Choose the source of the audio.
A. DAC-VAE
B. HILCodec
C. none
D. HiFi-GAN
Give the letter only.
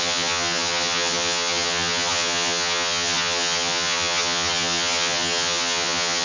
D